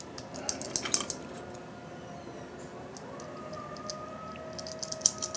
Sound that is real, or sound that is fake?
real